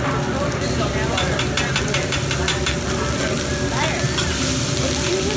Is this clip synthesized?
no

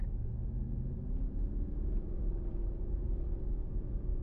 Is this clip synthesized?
no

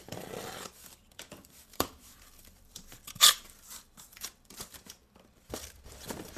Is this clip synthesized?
yes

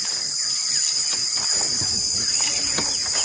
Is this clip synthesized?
no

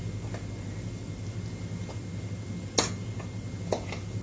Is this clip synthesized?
no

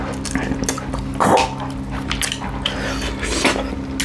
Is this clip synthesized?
no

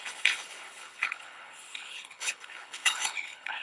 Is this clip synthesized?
yes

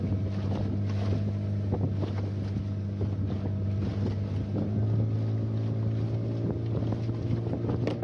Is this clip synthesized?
no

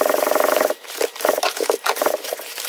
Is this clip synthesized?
yes